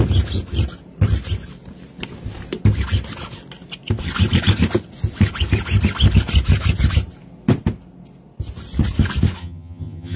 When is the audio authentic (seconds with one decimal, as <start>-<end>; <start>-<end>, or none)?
0.0-9.4